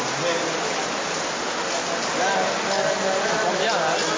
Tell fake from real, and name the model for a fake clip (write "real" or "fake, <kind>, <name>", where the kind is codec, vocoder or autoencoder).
real